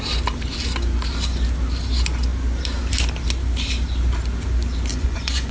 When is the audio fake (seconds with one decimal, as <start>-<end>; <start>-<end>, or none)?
4.9-5.5